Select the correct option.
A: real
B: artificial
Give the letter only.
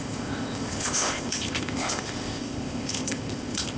B